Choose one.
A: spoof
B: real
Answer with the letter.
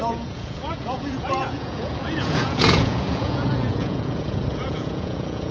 A